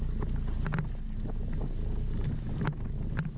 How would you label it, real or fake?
real